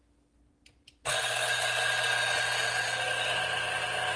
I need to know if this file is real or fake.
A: real